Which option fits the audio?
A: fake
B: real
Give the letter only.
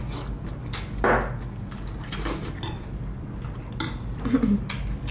B